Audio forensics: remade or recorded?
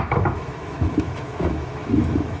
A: remade